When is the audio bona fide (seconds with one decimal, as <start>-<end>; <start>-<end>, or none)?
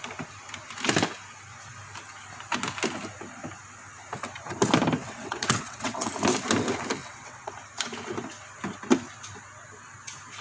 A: 0.0-5.0; 6.1-7.0; 7.5-10.4